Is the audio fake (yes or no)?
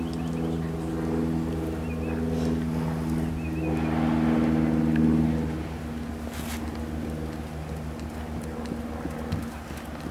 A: no